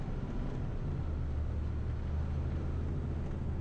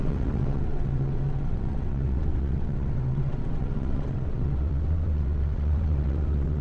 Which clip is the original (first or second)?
first